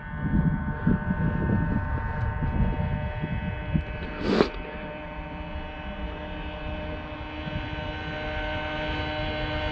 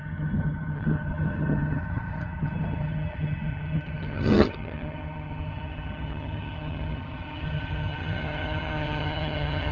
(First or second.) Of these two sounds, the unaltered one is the first